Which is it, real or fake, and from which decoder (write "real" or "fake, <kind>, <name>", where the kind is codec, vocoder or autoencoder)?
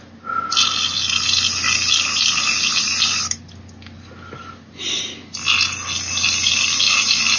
real